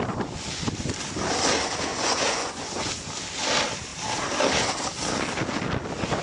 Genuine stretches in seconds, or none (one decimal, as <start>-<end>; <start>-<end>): 0.0-1.9; 2.9-6.2